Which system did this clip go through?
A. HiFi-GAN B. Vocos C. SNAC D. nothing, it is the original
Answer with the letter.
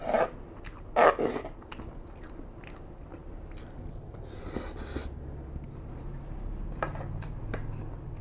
D